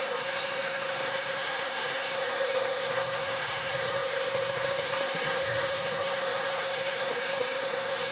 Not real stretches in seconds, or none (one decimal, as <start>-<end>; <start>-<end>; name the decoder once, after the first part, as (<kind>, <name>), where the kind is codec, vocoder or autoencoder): 0.0-8.1 (codec, SNAC)